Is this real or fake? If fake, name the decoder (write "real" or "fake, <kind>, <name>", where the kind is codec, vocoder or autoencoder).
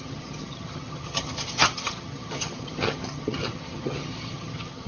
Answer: fake, vocoder, HiFi-GAN